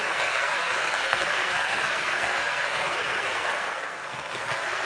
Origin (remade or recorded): remade